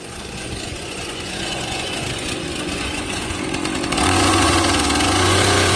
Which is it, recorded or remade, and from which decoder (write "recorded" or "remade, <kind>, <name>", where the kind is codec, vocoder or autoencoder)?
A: remade, vocoder, Vocos